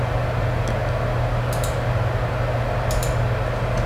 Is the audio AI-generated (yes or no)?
no